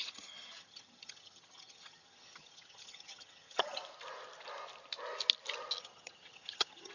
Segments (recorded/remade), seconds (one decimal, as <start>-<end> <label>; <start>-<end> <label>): 0.0-3.8 remade; 3.8-5.8 recorded; 5.8-6.9 remade